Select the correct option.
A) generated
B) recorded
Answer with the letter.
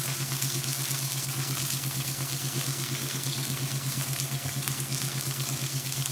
A